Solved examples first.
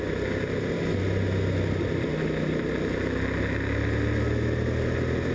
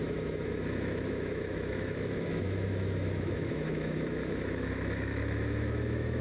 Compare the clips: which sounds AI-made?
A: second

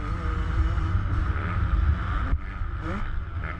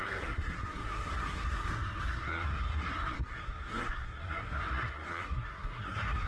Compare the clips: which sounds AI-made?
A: second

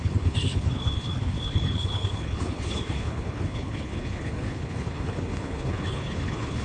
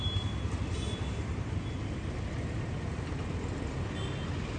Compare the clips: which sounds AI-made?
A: first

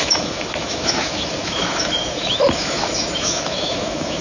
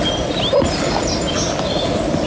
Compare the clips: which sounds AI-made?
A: first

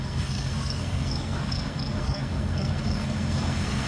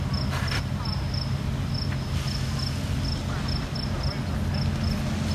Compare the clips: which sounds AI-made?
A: first